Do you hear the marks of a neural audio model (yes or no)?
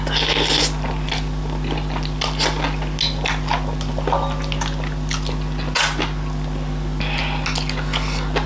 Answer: no